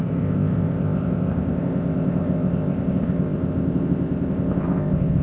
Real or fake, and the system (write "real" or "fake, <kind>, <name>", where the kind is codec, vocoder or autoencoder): fake, codec, ZipCodec